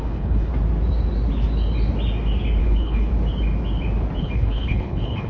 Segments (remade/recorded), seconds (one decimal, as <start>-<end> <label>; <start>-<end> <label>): 0.0-0.5 remade; 0.5-2.6 recorded; 2.6-3.1 remade; 3.1-4.2 recorded; 4.2-5.3 remade